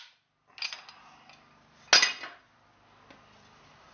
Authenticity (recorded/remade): recorded